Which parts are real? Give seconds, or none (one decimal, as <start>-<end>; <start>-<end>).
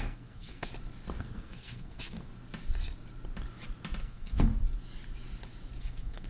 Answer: 0.7-1.2; 2.3-4.0; 4.5-5.8